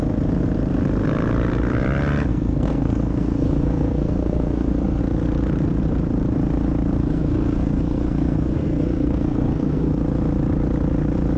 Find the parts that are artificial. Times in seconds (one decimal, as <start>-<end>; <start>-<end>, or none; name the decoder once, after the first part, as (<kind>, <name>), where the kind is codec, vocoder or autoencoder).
2.3-5.0 (codec, SNAC); 7.0-9.9